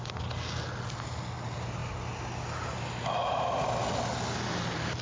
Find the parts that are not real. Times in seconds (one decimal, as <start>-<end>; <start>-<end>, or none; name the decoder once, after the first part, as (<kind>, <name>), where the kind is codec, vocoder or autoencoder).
none